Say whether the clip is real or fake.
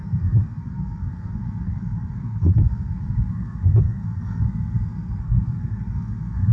fake